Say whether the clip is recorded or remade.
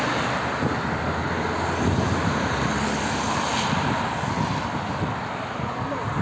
recorded